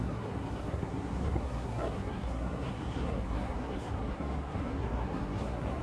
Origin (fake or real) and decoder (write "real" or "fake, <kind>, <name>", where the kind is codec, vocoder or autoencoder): fake, codec, SNAC